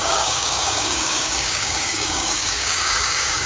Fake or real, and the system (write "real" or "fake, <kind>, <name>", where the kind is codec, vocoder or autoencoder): fake, codec, DAC